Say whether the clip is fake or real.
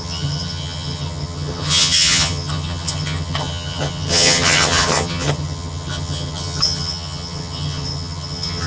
fake